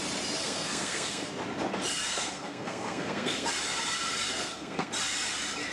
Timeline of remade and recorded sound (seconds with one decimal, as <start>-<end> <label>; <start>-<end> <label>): 0.0-0.4 recorded; 0.4-1.3 remade; 1.3-2.1 recorded; 2.1-3.5 remade; 3.5-4.3 recorded; 4.3-4.9 remade; 4.9-5.7 recorded

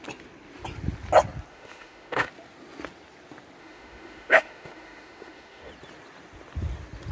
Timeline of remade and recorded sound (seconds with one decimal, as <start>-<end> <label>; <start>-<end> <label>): 0.0-1.5 recorded; 1.5-2.3 remade; 2.3-3.6 recorded; 3.6-5.7 remade; 5.7-7.1 recorded

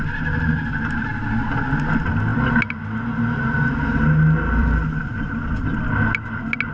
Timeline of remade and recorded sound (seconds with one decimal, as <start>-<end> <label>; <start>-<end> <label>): 0.0-4.6 recorded; 4.6-5.8 remade; 5.8-6.7 recorded